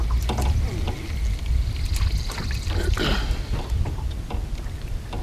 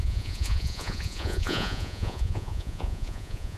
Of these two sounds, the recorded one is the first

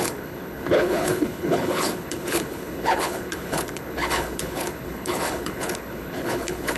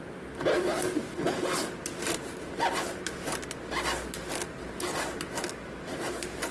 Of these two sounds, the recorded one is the second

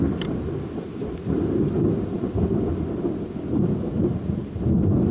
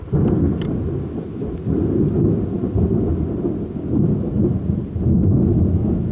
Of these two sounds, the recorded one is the second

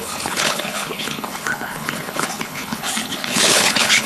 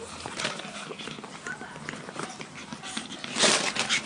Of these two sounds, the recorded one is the second